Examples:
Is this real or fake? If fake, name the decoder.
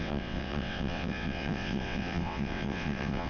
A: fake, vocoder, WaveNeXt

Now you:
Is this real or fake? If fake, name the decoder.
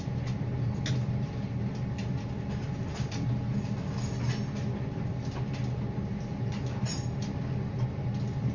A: real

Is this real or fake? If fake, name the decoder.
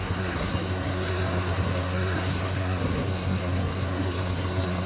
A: fake, codec, SNAC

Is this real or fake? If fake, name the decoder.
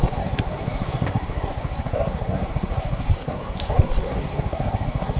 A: fake, codec, SNAC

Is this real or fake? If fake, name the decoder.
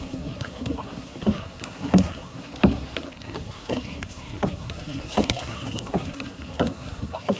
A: fake, codec, SNAC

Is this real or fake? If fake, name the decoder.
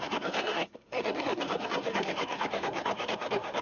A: fake, codec, SNAC